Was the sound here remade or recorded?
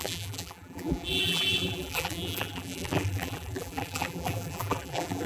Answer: remade